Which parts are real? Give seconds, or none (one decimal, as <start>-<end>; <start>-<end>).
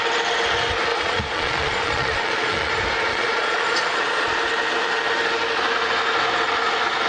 0.0-0.9; 2.7-3.1; 4.4-7.1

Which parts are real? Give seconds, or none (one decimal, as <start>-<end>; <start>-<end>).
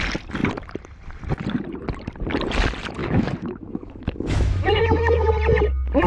0.0-3.0; 5.3-6.1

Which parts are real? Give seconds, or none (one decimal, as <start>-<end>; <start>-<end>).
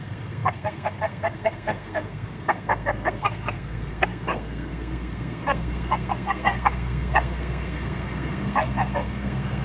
none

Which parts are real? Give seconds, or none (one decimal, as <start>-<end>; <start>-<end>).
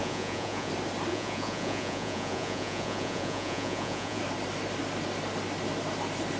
0.7-1.1; 4.2-6.4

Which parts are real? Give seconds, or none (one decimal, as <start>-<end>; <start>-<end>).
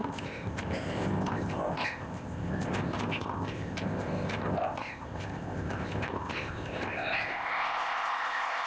none